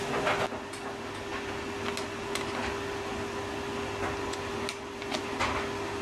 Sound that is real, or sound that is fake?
real